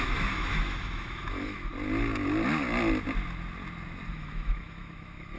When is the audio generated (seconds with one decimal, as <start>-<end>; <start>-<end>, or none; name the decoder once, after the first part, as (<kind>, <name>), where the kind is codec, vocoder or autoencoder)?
0.0-1.7 (autoencoder, DAC-VAE); 4.1-5.4